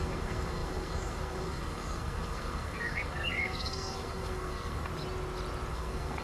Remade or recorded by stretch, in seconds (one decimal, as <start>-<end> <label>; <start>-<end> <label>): 0.0-4.9 remade; 4.9-5.7 recorded; 5.7-6.2 remade